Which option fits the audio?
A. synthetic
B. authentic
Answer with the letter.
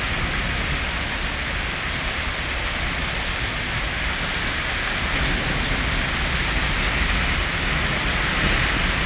B